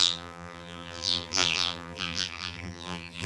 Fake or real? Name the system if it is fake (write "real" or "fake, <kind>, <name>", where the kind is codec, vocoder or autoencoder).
fake, vocoder, BigVGAN v2